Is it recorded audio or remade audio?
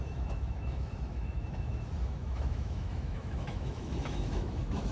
remade